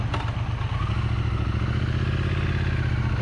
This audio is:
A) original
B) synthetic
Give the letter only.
A